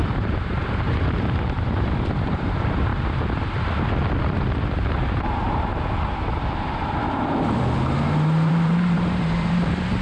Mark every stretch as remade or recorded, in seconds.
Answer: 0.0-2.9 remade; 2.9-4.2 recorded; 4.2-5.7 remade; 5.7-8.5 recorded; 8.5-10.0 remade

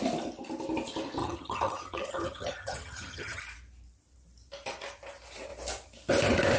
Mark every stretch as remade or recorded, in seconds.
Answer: 0.0-1.2 recorded; 1.2-3.4 remade; 3.4-6.6 recorded